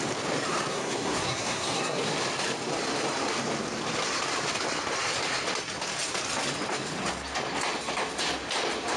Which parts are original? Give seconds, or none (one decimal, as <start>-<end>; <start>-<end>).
0.0-0.7; 2.0-9.0